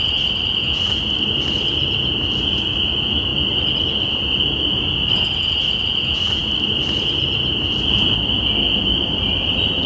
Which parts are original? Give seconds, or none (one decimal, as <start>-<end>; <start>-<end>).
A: 0.0-9.9